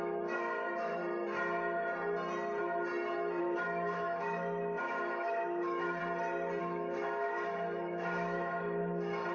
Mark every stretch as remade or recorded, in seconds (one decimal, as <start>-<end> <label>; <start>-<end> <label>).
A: 0.0-1.0 remade; 1.0-3.4 recorded; 3.4-6.0 remade; 6.0-6.6 recorded; 6.6-9.3 remade